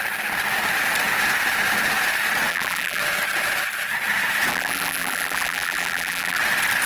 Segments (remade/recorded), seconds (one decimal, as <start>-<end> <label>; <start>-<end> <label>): 0.0-2.5 recorded; 2.5-3.0 remade; 3.0-4.5 recorded; 4.5-6.4 remade; 6.4-6.9 recorded